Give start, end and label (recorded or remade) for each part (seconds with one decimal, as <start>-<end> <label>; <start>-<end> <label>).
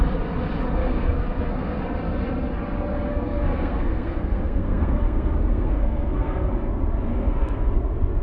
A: 0.0-0.8 recorded; 0.8-1.8 remade; 1.8-3.1 recorded; 3.1-6.5 remade; 6.5-7.1 recorded; 7.1-7.7 remade; 7.7-8.2 recorded